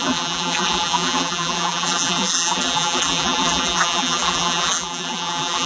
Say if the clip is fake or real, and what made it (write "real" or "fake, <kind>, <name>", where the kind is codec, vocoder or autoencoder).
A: fake, vocoder, BigVGAN v2